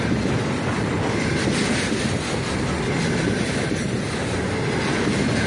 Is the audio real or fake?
fake